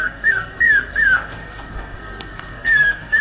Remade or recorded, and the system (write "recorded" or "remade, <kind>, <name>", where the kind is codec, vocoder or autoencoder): remade, codec, SNAC